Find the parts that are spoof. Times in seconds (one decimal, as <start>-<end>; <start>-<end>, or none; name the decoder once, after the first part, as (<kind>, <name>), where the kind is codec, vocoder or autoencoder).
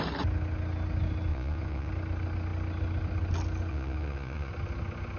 1.3-1.9 (vocoder, Vocos); 3.7-4.5